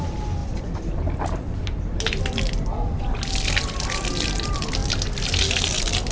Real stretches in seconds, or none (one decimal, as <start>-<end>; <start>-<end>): 0.0-0.4; 4.1-6.1